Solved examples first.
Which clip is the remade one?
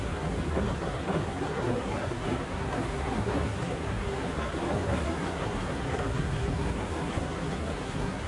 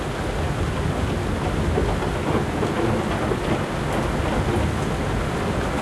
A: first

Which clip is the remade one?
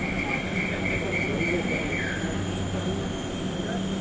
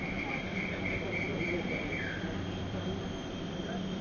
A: second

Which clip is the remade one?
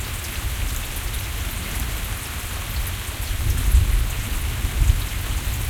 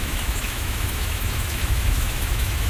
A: second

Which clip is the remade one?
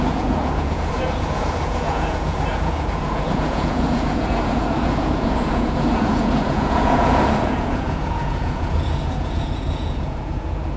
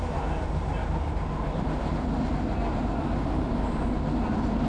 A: first